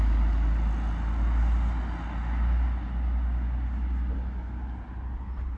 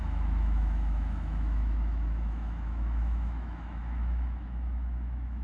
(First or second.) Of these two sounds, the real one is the first